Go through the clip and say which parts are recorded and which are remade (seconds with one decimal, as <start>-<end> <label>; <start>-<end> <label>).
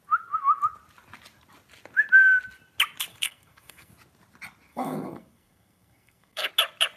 0.0-3.1 recorded; 3.1-3.9 remade; 3.9-4.7 recorded; 4.7-6.5 remade; 6.5-7.0 recorded